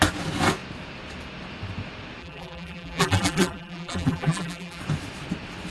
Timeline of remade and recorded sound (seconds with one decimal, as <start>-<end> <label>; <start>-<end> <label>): 0.0-2.2 recorded; 2.2-4.8 remade; 4.8-5.7 recorded